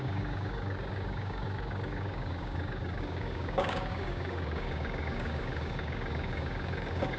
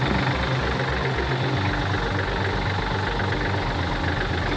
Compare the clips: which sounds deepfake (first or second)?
first